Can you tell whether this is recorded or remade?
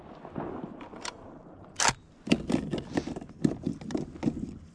recorded